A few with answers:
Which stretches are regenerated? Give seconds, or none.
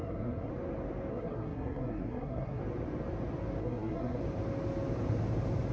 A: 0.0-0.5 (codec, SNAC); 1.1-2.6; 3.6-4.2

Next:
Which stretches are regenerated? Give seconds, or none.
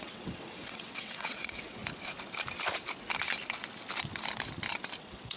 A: 0.0-1.8 (vocoder, WaveNeXt); 5.0-5.4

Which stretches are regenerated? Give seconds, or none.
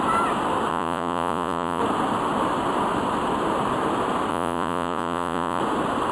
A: 0.7-1.8 (vocoder, Vocos); 4.3-5.6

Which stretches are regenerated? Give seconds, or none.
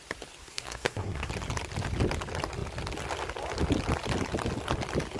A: 0.4-1.3 (codec, SNAC)